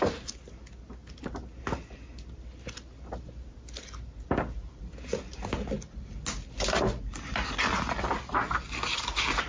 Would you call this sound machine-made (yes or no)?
no